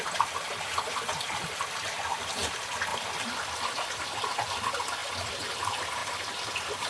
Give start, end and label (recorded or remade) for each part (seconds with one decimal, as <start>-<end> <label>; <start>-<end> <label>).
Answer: 0.0-6.9 remade